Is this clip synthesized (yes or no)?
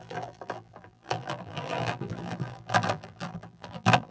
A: yes